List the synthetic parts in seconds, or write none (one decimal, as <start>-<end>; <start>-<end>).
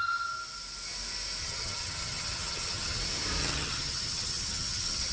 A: 1.4-3.0; 3.4-5.1